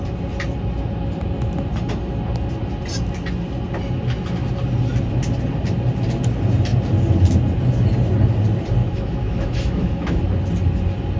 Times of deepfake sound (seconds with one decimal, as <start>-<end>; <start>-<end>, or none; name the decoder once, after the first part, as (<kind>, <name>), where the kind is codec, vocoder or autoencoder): 8.8-10.2 (autoencoder, DAC-VAE)

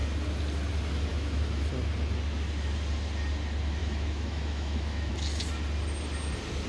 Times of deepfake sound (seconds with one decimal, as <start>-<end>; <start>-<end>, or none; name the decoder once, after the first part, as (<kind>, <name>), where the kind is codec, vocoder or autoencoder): 1.1-1.7 (autoencoder, DAC-VAE); 3.8-5.1

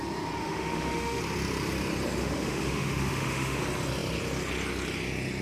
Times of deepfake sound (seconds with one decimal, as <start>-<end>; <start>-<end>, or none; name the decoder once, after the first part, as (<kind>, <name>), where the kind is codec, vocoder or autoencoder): 0.4-1.2 (autoencoder, DAC-VAE); 2.2-3.6

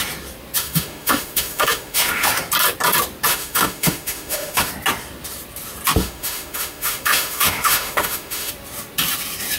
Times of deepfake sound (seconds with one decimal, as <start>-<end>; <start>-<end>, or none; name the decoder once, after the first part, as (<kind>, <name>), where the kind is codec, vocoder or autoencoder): 0.6-2.3 (autoencoder, DAC-VAE); 3.3-4.7; 6.0-8.5

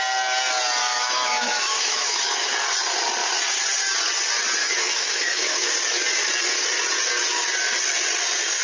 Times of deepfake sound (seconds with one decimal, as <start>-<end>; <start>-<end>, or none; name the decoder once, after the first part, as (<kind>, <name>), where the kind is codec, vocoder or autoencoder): 0.8-2.5 (autoencoder, DAC-VAE); 4.6-5.7

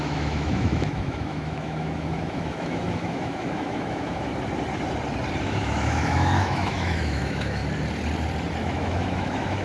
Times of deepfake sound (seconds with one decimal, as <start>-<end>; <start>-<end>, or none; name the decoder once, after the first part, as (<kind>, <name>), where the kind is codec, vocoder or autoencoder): 0.0-4.3 (autoencoder, DAC-VAE); 5.4-7.6; 8.6-9.6

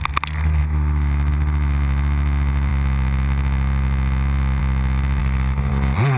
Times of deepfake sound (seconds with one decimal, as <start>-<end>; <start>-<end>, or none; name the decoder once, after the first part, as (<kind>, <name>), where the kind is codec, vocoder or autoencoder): 5.2-5.7 (autoencoder, DAC-VAE)